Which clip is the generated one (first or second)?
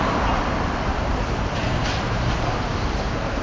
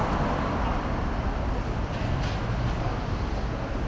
first